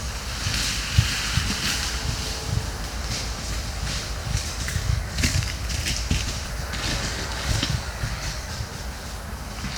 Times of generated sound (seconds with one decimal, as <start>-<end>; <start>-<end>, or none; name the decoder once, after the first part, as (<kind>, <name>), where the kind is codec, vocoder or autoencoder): 4.2-5.7 (codec, DAC); 6.9-8.5